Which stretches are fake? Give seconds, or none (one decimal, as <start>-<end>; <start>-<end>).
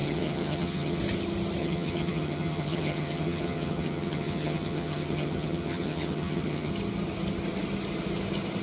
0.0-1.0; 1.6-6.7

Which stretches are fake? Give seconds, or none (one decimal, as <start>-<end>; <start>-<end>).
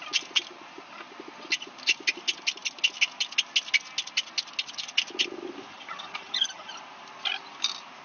5.7-6.7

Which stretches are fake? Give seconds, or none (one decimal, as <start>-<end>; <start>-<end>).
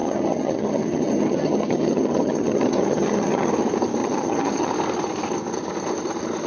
0.0-3.5; 4.0-4.7